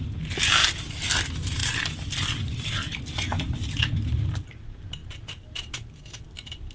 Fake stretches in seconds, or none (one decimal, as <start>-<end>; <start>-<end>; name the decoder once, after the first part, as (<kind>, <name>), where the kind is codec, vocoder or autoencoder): none